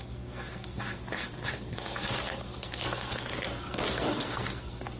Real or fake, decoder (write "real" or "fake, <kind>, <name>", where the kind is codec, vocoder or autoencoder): fake, codec, SNAC